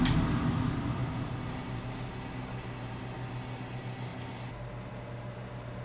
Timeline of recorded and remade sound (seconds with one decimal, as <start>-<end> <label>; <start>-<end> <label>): 0.0-5.8 recorded